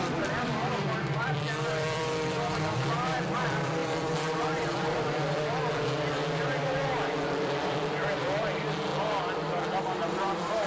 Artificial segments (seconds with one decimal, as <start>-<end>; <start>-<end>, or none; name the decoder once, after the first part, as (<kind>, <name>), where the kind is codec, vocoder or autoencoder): 0.0-8.9 (vocoder, BigVGAN v2); 9.8-10.7